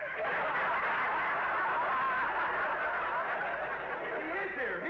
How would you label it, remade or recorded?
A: recorded